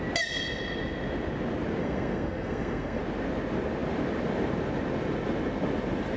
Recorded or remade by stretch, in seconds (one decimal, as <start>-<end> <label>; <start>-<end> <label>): 0.0-1.8 recorded; 1.8-3.0 remade; 3.0-6.2 recorded